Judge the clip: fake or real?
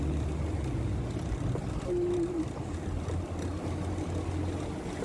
real